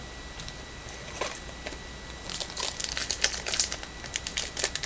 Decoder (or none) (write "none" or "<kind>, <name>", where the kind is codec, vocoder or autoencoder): none